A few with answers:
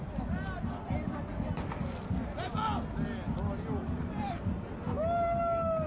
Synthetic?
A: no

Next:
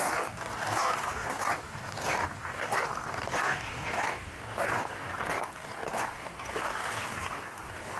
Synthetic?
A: yes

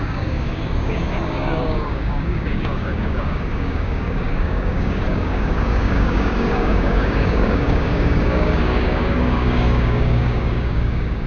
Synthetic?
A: yes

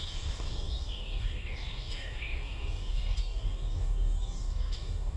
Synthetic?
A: yes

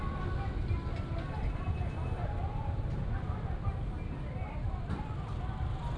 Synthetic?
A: no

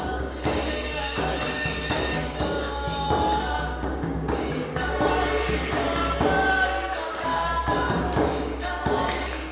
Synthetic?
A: yes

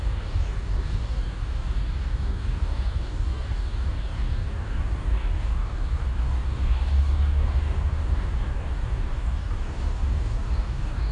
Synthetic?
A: yes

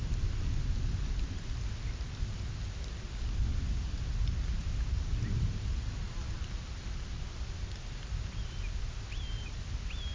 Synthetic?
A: no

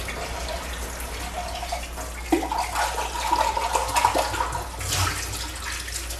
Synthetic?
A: no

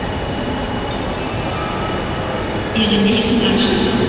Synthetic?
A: no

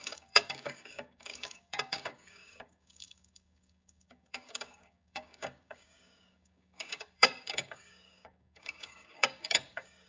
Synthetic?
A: yes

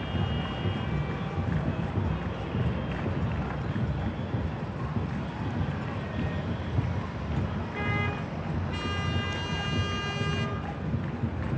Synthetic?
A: no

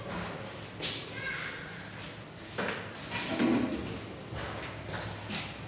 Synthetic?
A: no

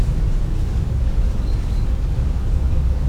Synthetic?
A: yes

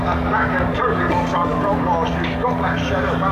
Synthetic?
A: yes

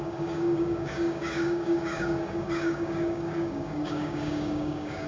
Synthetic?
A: yes